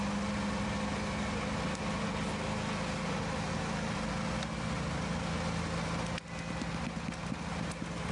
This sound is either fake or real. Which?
real